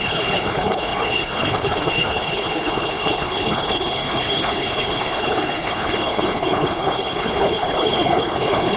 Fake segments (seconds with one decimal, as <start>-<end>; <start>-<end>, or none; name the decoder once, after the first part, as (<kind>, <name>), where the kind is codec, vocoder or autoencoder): 0.0-8.8 (codec, HILCodec)